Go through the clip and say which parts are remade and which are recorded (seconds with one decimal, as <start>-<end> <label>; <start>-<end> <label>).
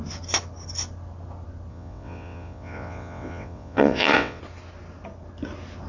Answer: 0.0-1.7 recorded; 1.7-4.4 remade; 4.4-5.9 recorded